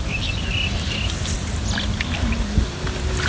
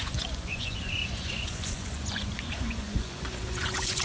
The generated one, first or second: second